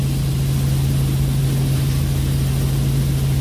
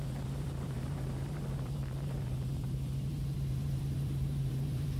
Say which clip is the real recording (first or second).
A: first